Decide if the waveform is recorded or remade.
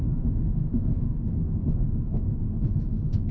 remade